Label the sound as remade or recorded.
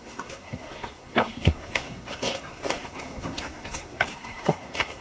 remade